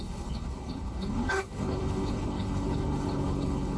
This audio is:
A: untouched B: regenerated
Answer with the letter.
B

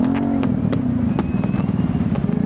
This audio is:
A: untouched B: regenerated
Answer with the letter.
A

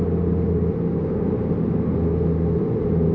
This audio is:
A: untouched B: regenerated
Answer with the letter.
A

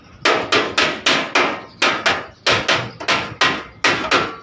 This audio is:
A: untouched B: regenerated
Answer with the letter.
A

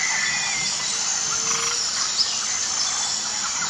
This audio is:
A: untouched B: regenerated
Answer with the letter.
A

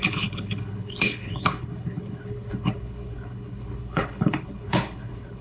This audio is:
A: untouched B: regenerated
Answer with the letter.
B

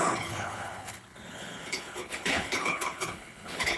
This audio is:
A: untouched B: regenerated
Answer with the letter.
B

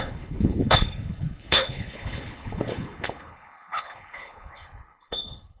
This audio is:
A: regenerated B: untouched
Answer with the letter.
A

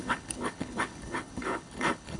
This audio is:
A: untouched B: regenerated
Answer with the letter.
B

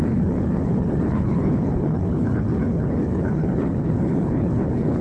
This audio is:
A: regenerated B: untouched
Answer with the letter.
A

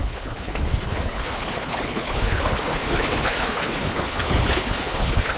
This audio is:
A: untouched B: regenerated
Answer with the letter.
B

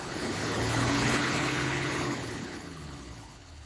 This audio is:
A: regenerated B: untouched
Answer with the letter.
A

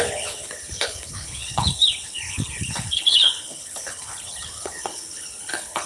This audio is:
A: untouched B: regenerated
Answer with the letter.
B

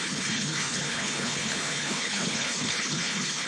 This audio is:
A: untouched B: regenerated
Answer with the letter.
B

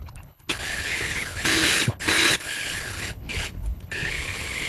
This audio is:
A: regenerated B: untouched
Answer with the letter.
A